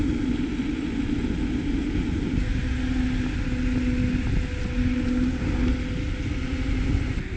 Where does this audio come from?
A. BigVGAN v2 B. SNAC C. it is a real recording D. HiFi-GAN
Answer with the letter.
C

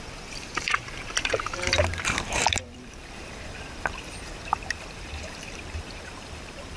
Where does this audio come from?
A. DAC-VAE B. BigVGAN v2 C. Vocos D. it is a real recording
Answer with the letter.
B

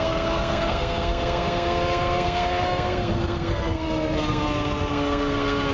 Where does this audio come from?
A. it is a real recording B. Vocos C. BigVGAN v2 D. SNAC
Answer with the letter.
D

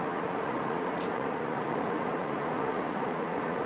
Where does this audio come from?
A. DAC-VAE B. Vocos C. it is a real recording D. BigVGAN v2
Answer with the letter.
B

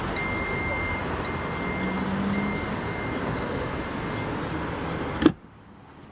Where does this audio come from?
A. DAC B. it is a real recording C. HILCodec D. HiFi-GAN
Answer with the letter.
B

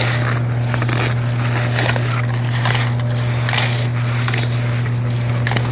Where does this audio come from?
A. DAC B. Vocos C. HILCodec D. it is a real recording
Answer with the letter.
D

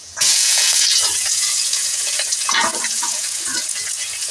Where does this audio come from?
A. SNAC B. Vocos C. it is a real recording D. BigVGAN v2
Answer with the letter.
B